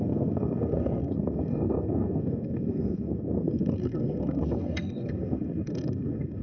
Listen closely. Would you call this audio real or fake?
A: fake